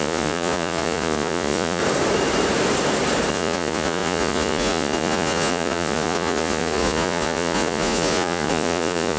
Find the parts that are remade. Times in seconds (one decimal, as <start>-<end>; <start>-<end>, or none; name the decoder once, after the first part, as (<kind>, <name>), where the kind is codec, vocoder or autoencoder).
0.0-1.8 (vocoder, Vocos); 3.3-9.2